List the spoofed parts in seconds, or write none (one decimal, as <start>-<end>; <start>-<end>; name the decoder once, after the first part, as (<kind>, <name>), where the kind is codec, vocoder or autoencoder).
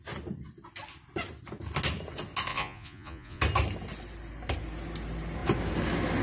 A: 2.5-3.4 (vocoder, Vocos)